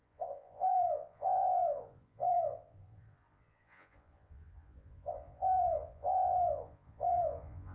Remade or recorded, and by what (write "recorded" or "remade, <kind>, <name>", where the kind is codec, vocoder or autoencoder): remade, vocoder, Vocos